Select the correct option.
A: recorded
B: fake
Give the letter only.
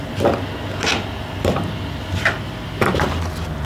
A